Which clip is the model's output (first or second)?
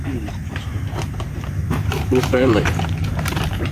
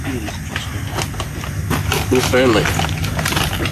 first